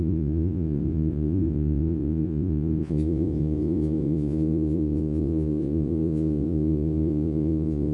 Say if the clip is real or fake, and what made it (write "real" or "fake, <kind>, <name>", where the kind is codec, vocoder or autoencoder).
fake, vocoder, Vocos